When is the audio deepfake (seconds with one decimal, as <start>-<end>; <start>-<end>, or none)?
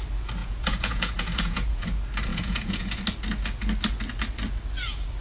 0.4-1.8; 2.3-3.0